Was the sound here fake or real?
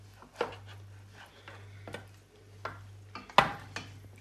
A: real